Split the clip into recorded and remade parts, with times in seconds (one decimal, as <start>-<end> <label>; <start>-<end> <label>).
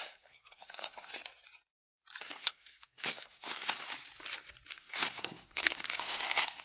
0.0-1.1 remade; 1.1-2.2 recorded; 2.2-3.9 remade; 3.9-4.7 recorded; 4.7-6.6 remade